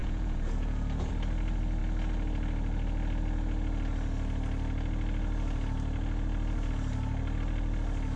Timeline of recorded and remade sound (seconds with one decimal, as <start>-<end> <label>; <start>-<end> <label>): 0.0-1.1 remade; 1.1-8.2 recorded